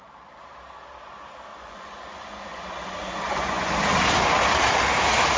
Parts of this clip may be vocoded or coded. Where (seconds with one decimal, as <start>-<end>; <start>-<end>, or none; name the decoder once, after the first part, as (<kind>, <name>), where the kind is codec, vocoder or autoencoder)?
1.5-3.7 (vocoder, Vocos)